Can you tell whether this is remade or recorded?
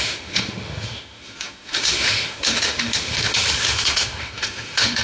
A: remade